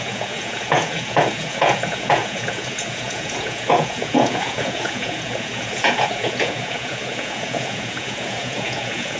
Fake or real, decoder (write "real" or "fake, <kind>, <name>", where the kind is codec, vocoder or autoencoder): fake, vocoder, Vocos